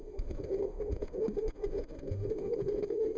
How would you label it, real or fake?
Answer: fake